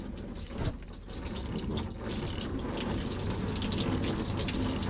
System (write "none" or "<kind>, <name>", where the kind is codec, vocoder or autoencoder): none